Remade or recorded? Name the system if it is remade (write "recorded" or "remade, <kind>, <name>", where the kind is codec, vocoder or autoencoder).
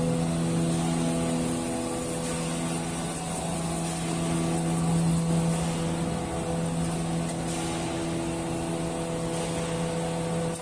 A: recorded